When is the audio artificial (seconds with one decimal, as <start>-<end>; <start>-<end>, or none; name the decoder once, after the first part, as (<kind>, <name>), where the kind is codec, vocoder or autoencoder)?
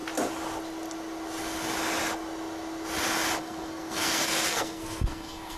3.4-5.6 (codec, SNAC)